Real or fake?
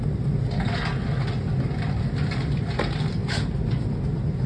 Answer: real